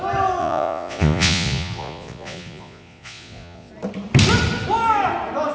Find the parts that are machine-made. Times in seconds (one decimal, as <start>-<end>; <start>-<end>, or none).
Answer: 0.4-3.7